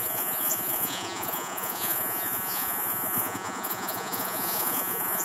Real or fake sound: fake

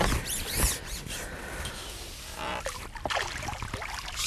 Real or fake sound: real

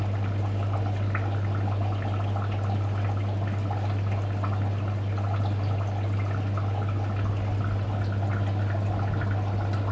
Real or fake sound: real